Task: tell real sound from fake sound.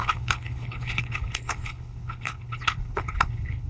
fake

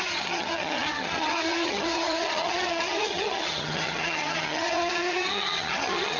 fake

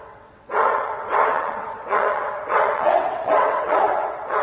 fake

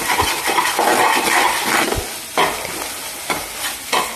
real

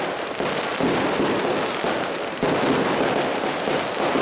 real